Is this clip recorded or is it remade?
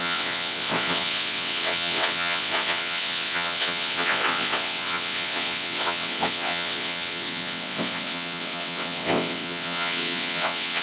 remade